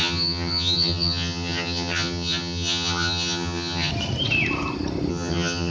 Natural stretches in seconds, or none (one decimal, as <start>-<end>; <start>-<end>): 3.9-5.1